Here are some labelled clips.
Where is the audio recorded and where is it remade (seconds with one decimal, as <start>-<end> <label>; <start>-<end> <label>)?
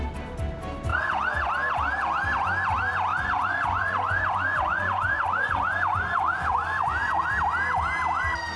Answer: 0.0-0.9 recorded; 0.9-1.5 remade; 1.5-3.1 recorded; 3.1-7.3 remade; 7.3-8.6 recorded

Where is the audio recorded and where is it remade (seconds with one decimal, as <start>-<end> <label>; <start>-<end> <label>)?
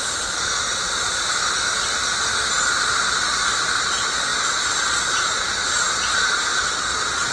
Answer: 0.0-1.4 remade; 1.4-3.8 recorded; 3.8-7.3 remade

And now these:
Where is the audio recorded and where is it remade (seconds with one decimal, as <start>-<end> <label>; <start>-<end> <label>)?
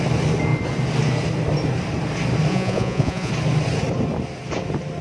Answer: 0.0-2.5 recorded; 2.5-3.3 remade; 3.3-5.0 recorded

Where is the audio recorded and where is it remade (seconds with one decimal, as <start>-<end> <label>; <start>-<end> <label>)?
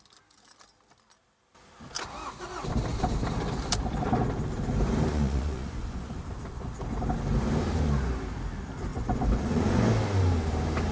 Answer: 0.0-5.1 recorded; 5.1-6.2 remade; 6.2-8.9 recorded; 8.9-9.9 remade; 9.9-10.9 recorded